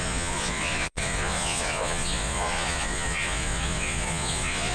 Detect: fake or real fake